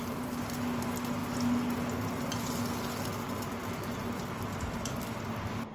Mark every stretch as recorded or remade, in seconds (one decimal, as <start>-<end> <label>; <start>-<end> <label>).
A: 0.0-5.7 recorded